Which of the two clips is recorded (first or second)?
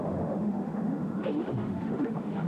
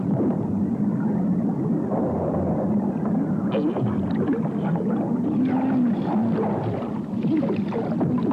second